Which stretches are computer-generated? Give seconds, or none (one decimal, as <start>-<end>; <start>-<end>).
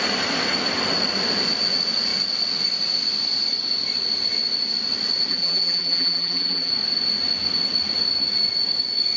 5.3-6.7